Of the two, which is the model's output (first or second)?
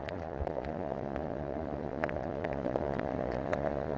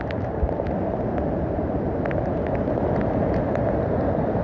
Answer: first